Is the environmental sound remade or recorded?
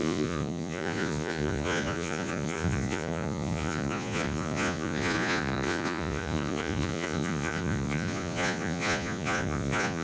remade